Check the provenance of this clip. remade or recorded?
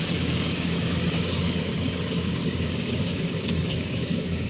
remade